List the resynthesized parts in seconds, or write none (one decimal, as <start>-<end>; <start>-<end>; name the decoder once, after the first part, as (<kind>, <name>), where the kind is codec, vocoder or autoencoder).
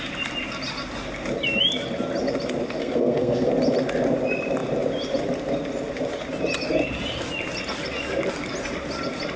2.8-3.5 (codec, SNAC)